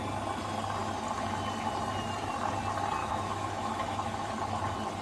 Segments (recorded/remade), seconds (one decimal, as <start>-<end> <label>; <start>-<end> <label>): 0.0-3.0 recorded; 3.0-4.3 remade; 4.3-5.0 recorded